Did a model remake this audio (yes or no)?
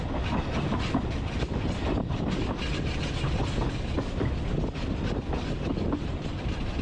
no